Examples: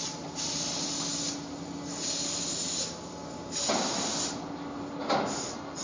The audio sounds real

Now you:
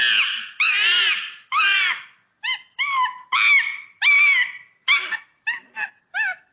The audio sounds real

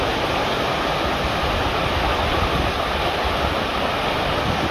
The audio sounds real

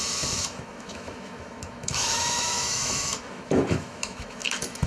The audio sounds fake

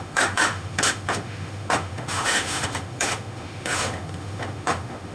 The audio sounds fake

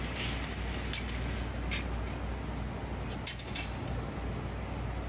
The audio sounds real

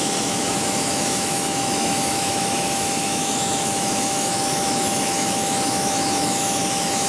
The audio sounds fake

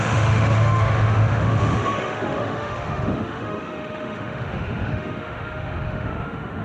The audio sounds fake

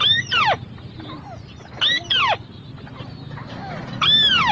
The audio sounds real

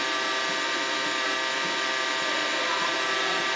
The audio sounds real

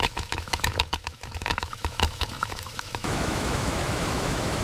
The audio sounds fake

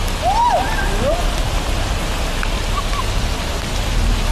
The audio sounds real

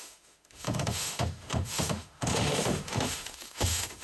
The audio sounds fake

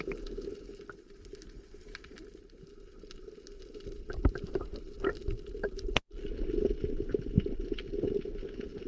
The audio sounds real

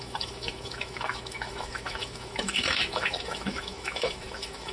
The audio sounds fake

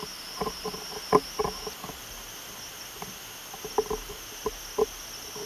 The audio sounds real